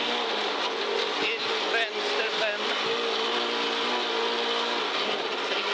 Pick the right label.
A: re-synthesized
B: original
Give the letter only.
B